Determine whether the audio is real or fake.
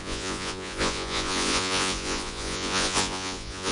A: fake